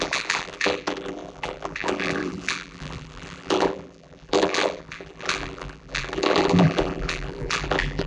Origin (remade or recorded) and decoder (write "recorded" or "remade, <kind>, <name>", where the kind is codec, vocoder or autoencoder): remade, vocoder, BigVGAN v2